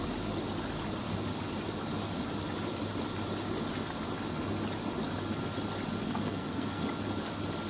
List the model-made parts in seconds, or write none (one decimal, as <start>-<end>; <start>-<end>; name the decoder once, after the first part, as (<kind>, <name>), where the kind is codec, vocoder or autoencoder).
6.0-6.8 (codec, SNAC)